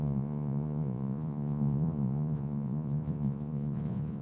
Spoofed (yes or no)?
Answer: yes